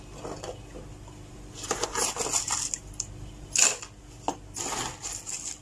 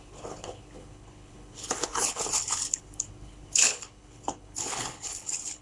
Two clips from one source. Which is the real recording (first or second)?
first